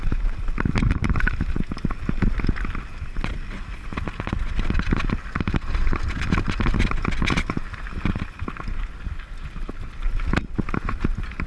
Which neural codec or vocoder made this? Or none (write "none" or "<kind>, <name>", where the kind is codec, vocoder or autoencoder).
none